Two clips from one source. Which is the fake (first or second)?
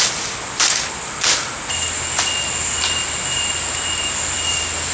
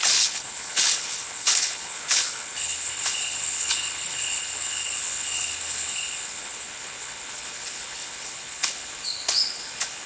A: second